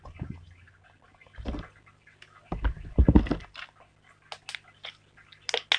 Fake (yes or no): no